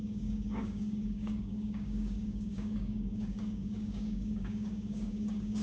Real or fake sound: fake